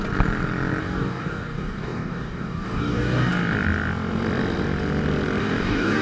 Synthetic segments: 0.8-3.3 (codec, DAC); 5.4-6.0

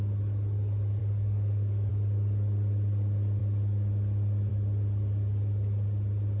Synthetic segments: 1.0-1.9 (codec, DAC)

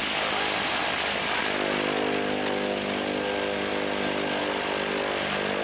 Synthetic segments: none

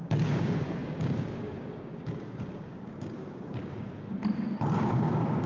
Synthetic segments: 0.0-4.2 (codec, DAC); 4.9-5.5

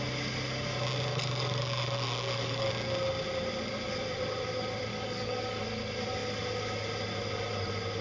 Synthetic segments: 1.1-2.7 (codec, DAC); 4.9-5.6

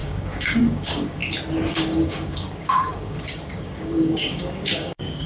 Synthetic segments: 0.0-1.2 (codec, DAC); 1.7-5.3

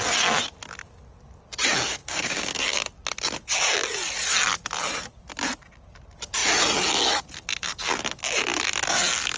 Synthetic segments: 2.0-2.6 (codec, DAC)

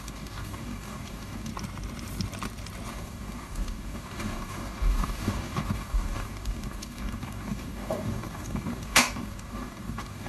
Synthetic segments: 0.0-1.5 (codec, DAC); 2.9-10.3